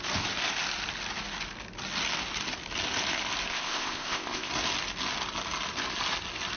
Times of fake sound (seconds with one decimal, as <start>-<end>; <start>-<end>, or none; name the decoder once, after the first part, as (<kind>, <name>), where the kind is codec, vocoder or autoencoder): 3.5-4.5 (codec, ZipCodec)